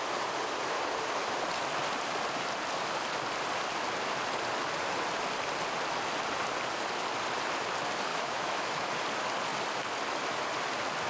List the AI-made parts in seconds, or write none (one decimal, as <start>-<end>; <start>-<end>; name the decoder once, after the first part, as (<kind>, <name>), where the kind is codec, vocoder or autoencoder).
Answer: 8.1-8.9 (autoencoder, DAC-VAE)